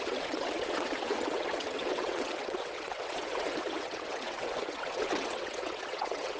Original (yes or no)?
no